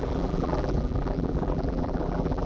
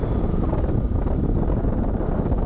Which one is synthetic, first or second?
first